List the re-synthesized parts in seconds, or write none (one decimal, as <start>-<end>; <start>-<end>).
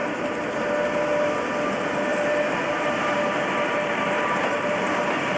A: 0.0-0.7; 2.1-5.4